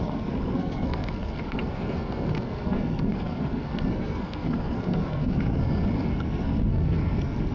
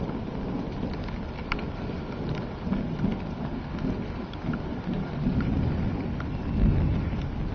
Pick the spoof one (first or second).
first